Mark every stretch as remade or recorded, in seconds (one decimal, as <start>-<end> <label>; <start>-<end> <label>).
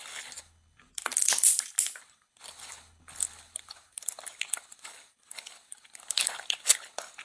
0.0-0.9 remade; 0.9-2.0 recorded; 2.0-7.2 remade